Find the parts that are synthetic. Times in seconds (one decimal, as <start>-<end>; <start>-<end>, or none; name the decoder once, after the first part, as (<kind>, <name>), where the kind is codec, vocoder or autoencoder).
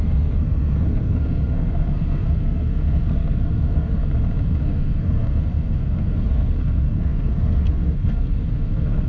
0.0-4.0 (codec, SNAC); 4.6-9.1